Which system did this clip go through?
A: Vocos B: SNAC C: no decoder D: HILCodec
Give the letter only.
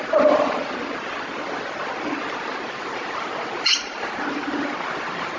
C